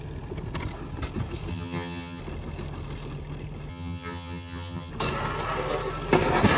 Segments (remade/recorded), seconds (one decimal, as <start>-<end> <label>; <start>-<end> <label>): 0.0-1.5 recorded; 1.5-2.2 remade; 2.2-3.7 recorded; 3.7-4.9 remade; 4.9-6.6 recorded